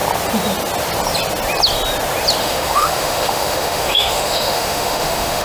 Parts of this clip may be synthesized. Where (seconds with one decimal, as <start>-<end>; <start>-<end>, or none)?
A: 2.4-5.4